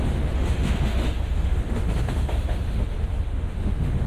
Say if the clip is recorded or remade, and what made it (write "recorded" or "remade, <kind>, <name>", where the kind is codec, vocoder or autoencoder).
remade, autoencoder, DAC-VAE